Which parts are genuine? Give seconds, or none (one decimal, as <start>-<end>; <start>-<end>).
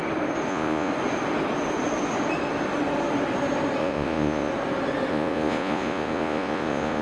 0.0-0.5; 0.9-3.8; 4.5-5.1